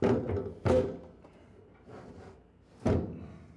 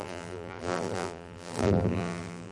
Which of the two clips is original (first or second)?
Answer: first